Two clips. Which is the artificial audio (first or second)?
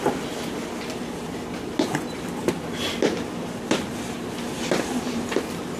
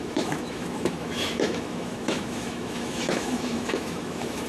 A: second